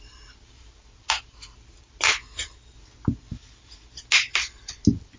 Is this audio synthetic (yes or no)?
no